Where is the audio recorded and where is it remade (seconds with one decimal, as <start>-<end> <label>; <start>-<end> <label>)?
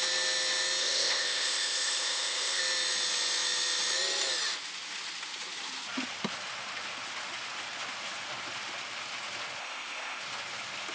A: 0.0-0.8 recorded; 0.8-2.6 remade; 2.6-9.6 recorded; 9.6-10.2 remade; 10.2-10.9 recorded